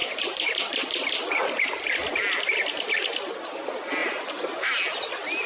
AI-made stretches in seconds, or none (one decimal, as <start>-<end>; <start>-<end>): 4.0-4.7